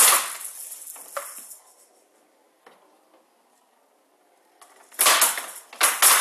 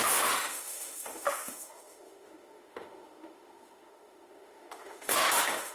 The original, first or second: first